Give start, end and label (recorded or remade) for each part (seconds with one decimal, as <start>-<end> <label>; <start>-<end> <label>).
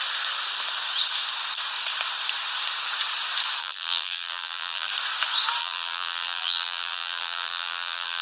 0.0-3.6 recorded; 3.6-4.9 remade; 4.9-5.6 recorded; 5.6-8.2 remade